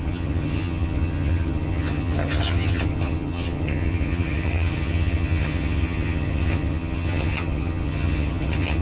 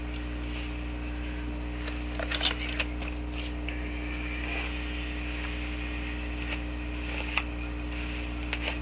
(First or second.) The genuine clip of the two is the second